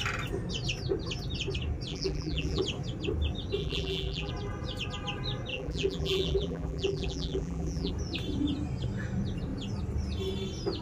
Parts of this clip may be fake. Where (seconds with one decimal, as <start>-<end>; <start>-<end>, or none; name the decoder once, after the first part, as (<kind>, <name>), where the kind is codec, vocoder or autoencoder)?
1.9-2.6 (vocoder, BigVGAN v2); 3.6-4.3; 5.5-7.9